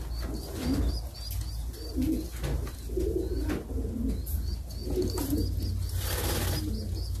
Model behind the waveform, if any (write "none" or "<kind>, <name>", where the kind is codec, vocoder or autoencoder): none